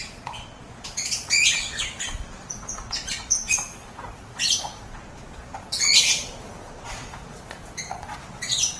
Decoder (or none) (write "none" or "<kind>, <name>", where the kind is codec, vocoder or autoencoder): vocoder, Vocos